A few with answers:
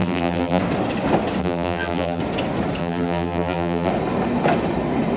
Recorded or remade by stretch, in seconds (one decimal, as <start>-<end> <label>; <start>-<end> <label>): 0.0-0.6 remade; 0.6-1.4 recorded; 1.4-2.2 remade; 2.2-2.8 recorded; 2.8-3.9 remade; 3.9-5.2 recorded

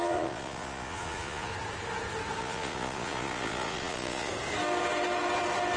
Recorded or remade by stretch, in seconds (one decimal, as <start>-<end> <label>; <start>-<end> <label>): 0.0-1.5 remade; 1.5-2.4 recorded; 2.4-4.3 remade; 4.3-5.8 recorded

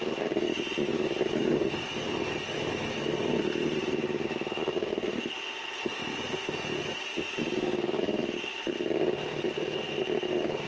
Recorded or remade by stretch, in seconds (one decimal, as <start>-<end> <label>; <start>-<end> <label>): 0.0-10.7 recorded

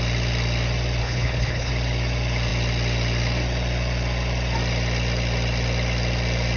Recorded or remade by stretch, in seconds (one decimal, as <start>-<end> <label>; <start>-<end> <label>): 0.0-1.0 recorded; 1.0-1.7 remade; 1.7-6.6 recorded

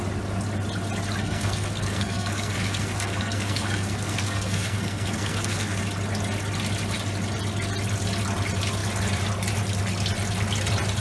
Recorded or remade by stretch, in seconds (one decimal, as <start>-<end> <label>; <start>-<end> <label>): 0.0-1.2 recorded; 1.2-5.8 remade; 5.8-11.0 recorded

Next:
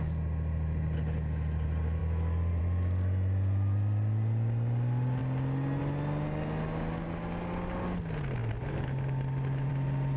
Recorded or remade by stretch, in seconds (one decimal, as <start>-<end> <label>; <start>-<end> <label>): 0.0-10.2 recorded

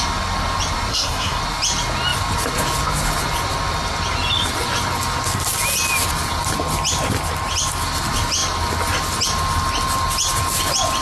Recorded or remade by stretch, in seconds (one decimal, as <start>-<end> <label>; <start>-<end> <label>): 0.0-0.9 recorded; 0.9-1.4 remade; 1.4-11.0 recorded